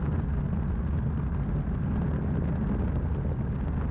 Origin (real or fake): real